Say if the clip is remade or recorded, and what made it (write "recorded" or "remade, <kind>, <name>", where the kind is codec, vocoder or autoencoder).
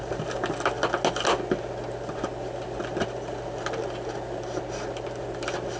recorded